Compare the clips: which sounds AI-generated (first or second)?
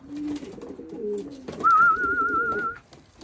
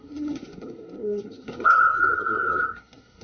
second